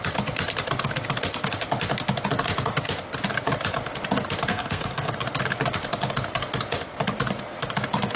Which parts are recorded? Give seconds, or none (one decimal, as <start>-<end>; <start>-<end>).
0.0-4.5; 5.1-8.2